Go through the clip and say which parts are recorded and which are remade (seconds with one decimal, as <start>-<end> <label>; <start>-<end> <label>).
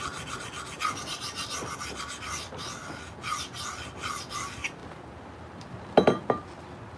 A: 0.0-7.0 recorded